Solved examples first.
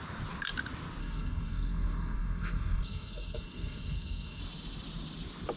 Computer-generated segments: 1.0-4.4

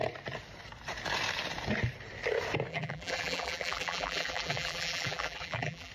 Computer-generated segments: 2.7-5.9